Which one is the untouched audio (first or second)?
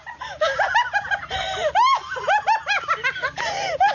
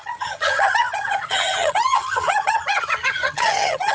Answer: first